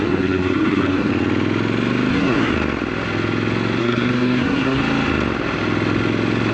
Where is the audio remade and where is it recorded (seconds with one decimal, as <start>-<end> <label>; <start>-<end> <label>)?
0.0-1.1 remade; 1.1-2.1 recorded; 2.1-2.5 remade; 2.5-3.8 recorded; 3.8-4.8 remade; 4.8-6.5 recorded